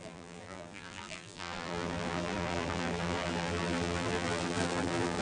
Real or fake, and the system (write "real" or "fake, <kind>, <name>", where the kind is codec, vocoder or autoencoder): fake, vocoder, BigVGAN v2